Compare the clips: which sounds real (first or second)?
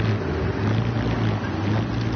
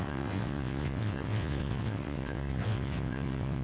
first